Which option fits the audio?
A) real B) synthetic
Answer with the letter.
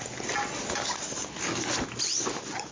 A